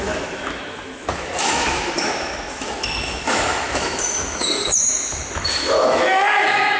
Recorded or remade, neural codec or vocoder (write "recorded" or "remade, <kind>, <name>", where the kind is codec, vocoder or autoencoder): remade, autoencoder, DAC-VAE